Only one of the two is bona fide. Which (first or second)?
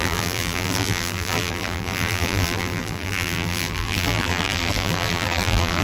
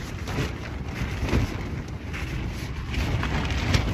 second